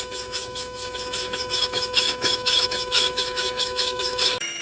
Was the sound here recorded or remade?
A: remade